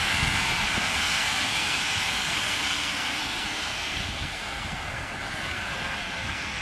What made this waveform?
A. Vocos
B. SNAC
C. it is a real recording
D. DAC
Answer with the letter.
B